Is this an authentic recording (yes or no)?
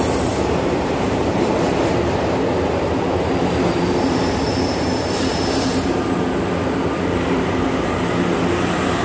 no